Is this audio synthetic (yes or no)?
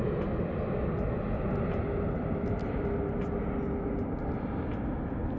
no